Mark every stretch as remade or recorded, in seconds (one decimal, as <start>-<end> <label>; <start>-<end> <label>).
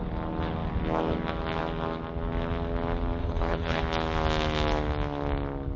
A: 0.0-3.2 recorded; 3.2-3.8 remade; 3.8-5.8 recorded